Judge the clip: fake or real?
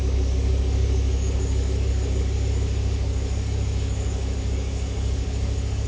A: fake